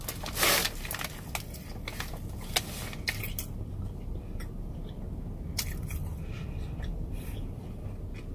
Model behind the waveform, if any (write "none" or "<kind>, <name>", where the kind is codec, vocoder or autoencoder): none